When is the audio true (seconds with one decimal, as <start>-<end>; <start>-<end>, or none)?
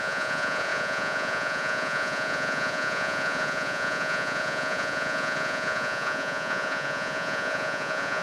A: none